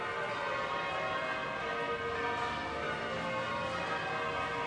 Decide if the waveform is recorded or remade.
recorded